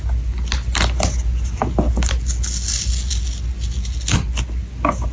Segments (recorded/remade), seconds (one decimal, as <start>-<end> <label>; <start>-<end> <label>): 0.0-5.1 recorded